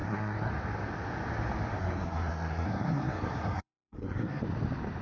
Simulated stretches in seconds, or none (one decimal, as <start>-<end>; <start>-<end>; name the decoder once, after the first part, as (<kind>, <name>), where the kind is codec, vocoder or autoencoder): 0.0-0.5 (codec, SNAC); 1.8-4.4